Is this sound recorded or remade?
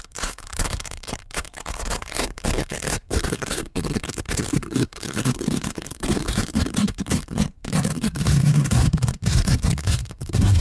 remade